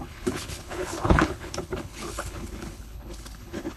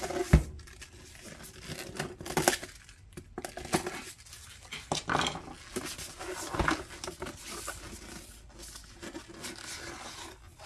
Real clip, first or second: second